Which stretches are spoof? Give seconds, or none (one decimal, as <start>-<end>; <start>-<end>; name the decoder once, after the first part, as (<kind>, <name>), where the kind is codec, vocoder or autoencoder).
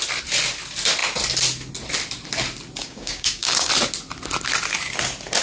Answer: 2.8-3.7 (codec, DAC)